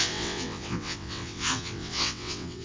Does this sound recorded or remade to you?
remade